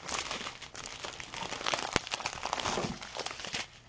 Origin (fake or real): real